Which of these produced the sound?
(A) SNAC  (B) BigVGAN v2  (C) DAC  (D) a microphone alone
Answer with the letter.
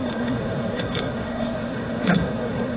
A